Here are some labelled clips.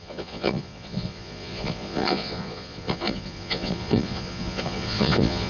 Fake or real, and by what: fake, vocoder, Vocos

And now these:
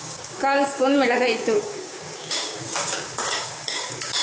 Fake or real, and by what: fake, codec, DAC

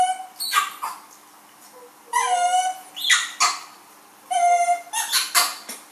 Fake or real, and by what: real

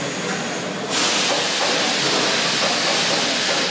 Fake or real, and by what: real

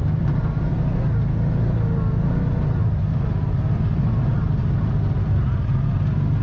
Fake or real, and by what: real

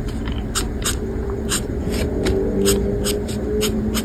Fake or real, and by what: real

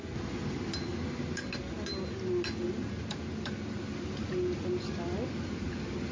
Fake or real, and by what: real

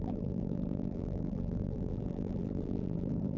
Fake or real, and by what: fake, vocoder, BigVGAN v2